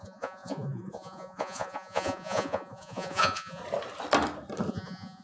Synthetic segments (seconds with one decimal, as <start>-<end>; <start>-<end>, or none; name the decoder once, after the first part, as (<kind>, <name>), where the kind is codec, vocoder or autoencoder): 0.0-3.6 (vocoder, Vocos); 4.7-5.2